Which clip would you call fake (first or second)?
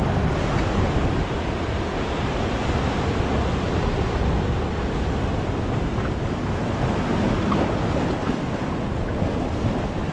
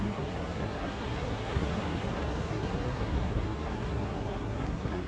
second